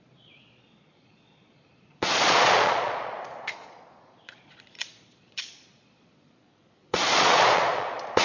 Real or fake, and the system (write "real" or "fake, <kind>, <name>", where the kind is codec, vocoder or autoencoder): fake, vocoder, Vocos